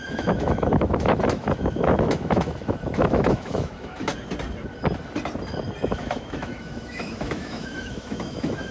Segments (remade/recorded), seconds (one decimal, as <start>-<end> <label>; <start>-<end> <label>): 0.0-4.1 remade; 4.1-5.8 recorded; 5.8-8.7 remade